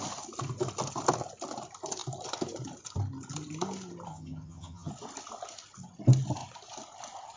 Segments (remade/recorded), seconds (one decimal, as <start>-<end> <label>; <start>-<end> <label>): 0.0-4.1 recorded; 4.1-4.9 remade; 4.9-7.4 recorded